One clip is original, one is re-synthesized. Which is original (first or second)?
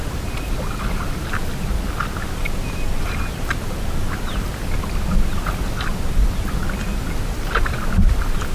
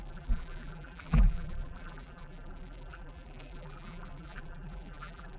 first